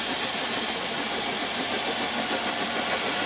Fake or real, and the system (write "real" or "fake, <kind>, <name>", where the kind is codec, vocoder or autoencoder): real